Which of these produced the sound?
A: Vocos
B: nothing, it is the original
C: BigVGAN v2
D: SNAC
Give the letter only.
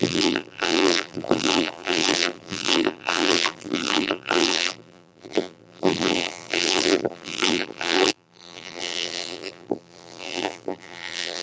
C